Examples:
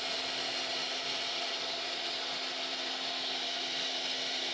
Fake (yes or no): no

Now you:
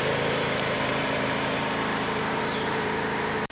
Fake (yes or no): yes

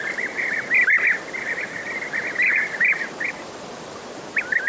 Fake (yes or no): no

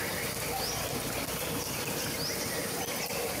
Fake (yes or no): no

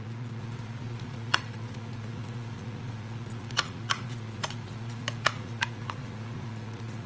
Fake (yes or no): yes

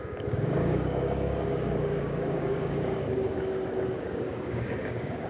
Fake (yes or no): yes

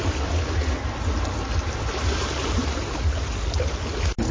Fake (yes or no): no